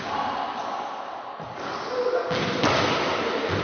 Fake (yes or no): no